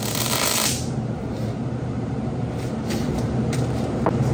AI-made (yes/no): yes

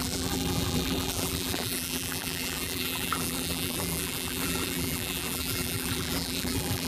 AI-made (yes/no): yes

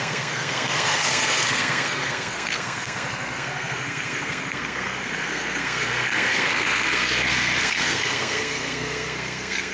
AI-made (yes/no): yes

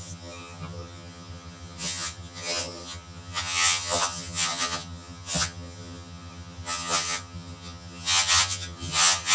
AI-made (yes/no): yes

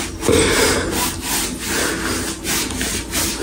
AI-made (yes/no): no